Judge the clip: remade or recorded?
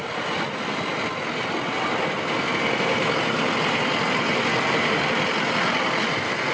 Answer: recorded